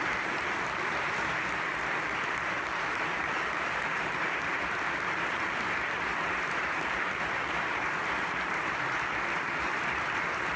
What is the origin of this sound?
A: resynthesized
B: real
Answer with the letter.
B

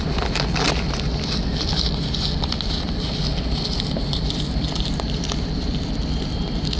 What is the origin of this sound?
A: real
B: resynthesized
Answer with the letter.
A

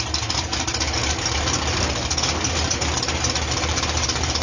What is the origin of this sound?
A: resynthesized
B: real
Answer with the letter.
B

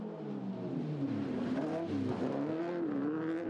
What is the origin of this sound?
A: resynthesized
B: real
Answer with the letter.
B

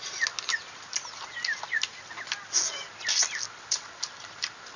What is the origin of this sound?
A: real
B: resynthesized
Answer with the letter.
A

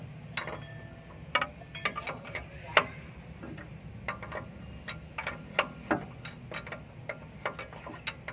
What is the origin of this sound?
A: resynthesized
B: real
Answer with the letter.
B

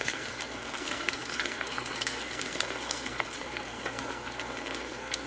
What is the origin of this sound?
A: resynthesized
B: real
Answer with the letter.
A